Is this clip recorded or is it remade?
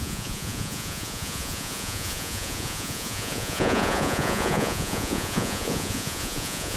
remade